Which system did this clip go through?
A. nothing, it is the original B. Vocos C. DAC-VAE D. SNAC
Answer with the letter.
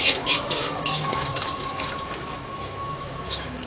C